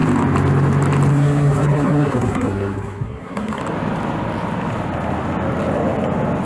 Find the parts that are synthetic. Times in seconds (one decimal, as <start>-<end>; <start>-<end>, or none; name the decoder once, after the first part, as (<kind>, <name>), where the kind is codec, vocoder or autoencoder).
1.1-3.6 (codec, SNAC)